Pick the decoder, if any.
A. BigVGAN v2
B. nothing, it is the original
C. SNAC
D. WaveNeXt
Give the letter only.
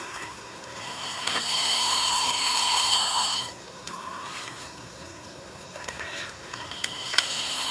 C